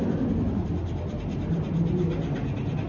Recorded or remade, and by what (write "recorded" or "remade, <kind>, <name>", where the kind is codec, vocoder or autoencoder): recorded